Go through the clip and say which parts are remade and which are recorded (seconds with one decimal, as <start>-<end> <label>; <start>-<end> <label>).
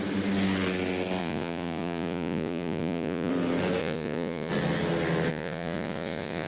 0.0-1.2 recorded; 1.2-3.3 remade; 3.3-3.8 recorded; 3.8-4.5 remade; 4.5-5.3 recorded; 5.3-6.5 remade